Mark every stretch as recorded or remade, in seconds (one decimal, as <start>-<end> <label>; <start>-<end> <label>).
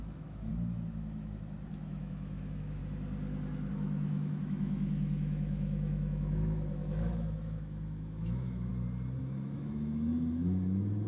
0.0-0.5 remade; 0.5-1.7 recorded; 1.7-2.8 remade; 2.8-3.7 recorded; 3.7-8.7 remade; 8.7-9.2 recorded; 9.2-11.1 remade